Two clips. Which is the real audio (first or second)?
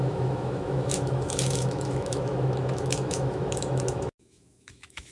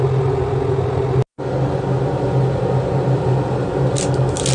second